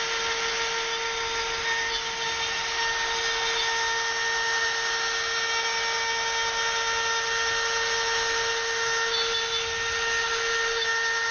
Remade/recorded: recorded